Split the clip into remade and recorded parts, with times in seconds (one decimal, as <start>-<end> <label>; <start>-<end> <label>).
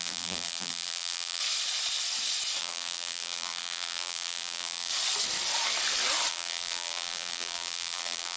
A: 0.0-1.4 remade; 1.4-2.6 recorded; 2.6-4.9 remade; 4.9-6.3 recorded; 6.3-8.4 remade